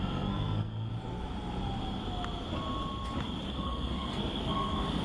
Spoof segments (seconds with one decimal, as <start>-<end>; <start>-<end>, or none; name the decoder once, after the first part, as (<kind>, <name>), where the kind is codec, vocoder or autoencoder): 0.0-0.9 (codec, SNAC); 3.5-5.0